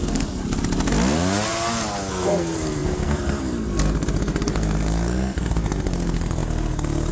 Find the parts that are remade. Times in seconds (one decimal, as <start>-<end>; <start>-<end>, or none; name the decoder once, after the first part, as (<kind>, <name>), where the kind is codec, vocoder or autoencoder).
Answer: 0.0-0.4 (codec, SNAC); 2.1-7.1